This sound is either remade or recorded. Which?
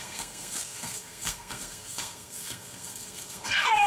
remade